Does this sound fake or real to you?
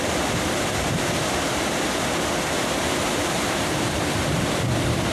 real